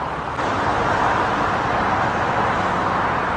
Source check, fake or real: real